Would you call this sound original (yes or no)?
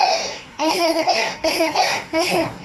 no